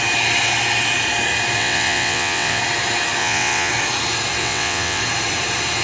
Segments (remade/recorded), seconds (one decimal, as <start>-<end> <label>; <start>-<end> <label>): 0.0-1.6 recorded; 1.6-2.6 remade; 2.6-3.2 recorded; 3.2-3.7 remade; 3.7-4.4 recorded; 4.4-5.0 remade; 5.0-5.8 recorded